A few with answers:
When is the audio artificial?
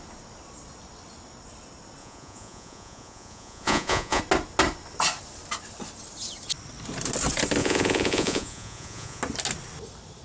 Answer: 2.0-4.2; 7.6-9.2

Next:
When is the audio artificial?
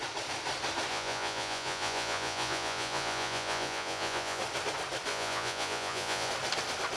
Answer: 0.9-4.4; 5.1-6.3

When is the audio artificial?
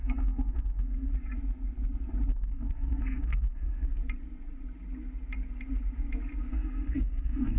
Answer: 0.0-1.1; 2.3-4.0; 6.5-7.6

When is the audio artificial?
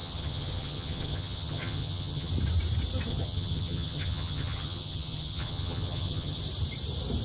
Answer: 0.0-2.3; 3.1-6.4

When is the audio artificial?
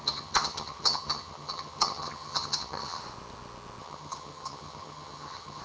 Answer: 0.0-3.0; 3.8-5.6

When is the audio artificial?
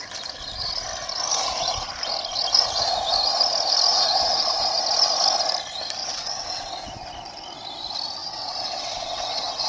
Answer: 3.9-4.7; 6.0-6.7; 8.2-9.7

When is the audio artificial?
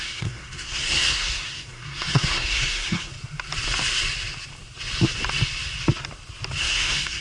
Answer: 0.0-3.1; 6.6-7.2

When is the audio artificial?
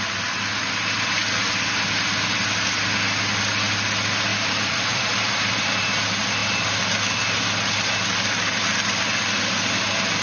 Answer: 4.3-5.8